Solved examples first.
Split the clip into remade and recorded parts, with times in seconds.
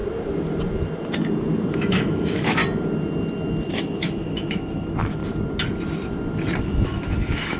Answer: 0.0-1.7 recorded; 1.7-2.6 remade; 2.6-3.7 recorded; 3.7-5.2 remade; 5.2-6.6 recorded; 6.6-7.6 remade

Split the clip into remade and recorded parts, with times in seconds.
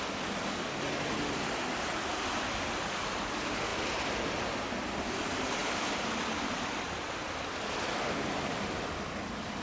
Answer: 0.0-9.6 recorded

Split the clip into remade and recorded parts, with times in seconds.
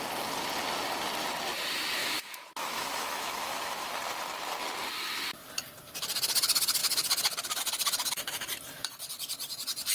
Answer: 0.0-2.0 recorded; 2.0-3.9 remade; 3.9-9.9 recorded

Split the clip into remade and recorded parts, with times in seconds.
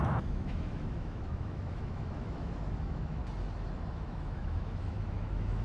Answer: 0.0-3.2 remade; 3.2-3.9 recorded; 3.9-5.6 remade